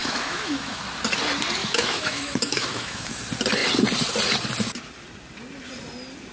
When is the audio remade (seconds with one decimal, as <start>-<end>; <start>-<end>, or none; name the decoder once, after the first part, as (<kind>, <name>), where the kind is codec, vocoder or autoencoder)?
0.0-0.8 (autoencoder, DAC-VAE); 1.6-3.2